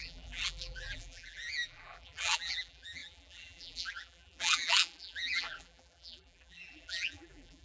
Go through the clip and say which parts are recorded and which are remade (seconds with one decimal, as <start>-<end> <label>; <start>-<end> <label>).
0.0-7.6 remade